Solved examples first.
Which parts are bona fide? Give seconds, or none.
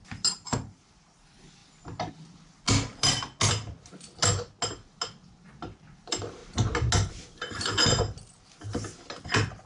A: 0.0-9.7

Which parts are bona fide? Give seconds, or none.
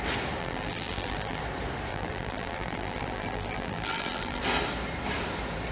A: 0.0-0.4; 1.4-1.9; 4.4-5.7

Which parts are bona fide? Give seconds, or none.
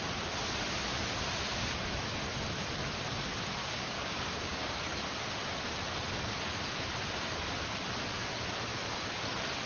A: 0.0-3.6; 4.8-9.7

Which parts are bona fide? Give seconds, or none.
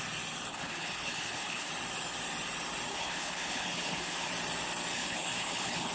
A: 0.0-0.5; 1.7-2.9; 4.3-4.9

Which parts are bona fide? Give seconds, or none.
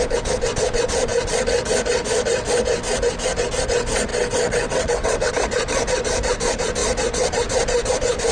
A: 0.0-4.1; 5.3-8.3